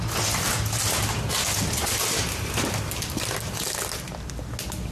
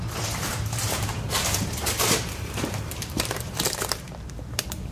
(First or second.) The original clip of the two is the first